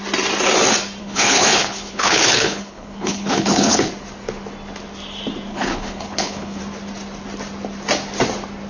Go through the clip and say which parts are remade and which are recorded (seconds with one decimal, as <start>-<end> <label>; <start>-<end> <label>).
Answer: 0.0-1.0 recorded; 1.0-3.9 remade; 3.9-5.5 recorded; 5.5-6.6 remade; 6.6-8.7 recorded